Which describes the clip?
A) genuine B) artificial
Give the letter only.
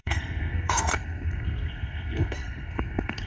B